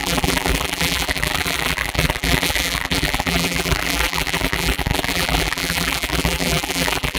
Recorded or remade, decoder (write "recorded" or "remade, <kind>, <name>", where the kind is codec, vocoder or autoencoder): remade, vocoder, BigVGAN v2